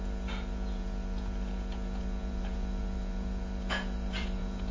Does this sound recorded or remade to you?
remade